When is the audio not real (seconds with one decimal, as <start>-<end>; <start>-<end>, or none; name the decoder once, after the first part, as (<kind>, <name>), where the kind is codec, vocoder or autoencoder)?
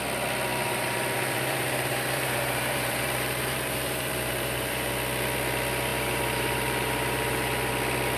0.5-4.9 (vocoder, BigVGAN v2); 5.9-7.7